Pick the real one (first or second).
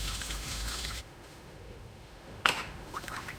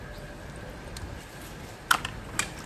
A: second